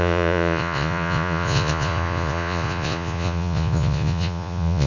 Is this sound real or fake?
fake